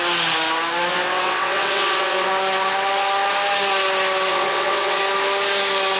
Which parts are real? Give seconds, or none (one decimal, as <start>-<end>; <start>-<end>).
0.0-0.9; 2.3-4.3; 5.0-6.0